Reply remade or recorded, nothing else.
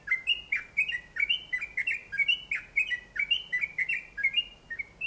recorded